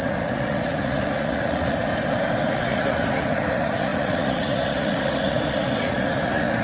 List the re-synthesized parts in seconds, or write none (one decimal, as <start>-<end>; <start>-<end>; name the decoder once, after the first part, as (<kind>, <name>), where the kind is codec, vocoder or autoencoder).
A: 0.0-1.9 (vocoder, Vocos); 2.4-6.6